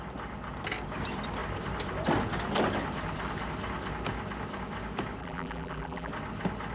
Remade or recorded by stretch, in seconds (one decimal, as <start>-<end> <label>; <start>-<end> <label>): 0.0-5.2 recorded; 5.2-6.1 remade; 6.1-6.7 recorded

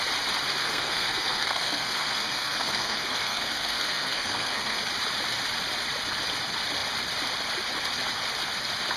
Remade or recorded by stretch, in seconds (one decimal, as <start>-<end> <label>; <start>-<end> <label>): 0.0-0.6 recorded; 0.6-4.8 remade; 4.8-9.0 recorded

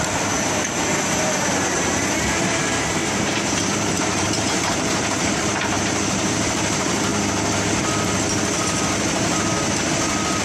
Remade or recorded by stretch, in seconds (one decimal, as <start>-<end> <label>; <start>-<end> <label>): 0.0-7.1 remade; 7.1-10.4 recorded